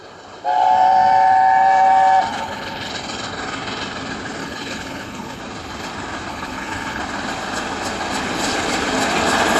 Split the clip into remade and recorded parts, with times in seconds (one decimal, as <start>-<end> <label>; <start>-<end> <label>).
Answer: 0.0-2.3 recorded; 2.3-2.9 remade; 2.9-4.4 recorded; 4.4-5.4 remade; 5.4-6.3 recorded; 6.3-7.0 remade; 7.0-9.6 recorded